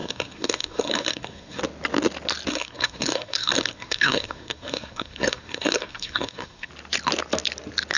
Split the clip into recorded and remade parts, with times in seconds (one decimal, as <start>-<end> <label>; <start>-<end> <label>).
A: 0.0-1.6 remade; 1.6-2.5 recorded; 2.5-6.7 remade; 6.7-8.0 recorded